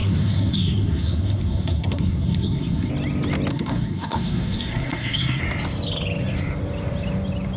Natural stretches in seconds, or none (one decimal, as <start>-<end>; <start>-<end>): 2.9-3.5; 5.4-7.6